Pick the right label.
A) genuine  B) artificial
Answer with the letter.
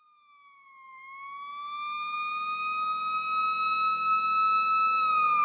A